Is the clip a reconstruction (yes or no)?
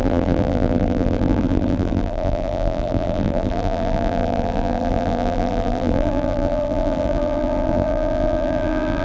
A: yes